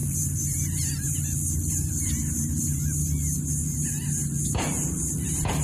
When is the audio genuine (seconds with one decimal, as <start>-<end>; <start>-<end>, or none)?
3.4-5.6